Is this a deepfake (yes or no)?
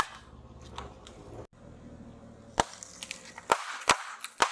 no